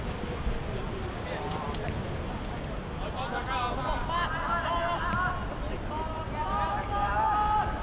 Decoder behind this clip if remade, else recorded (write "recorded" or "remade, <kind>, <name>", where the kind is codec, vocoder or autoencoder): recorded